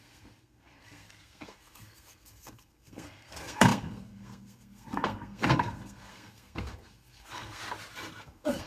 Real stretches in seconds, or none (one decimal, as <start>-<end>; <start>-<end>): 7.6-8.2